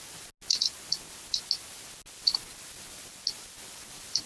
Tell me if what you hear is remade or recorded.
recorded